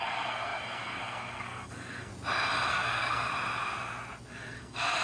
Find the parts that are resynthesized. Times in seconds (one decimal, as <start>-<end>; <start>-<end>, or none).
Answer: 0.0-2.1; 2.7-3.3; 4.3-5.0